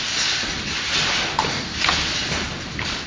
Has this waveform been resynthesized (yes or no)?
no